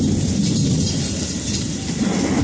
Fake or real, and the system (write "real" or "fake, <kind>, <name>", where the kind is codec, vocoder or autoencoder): real